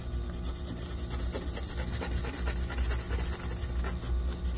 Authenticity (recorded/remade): recorded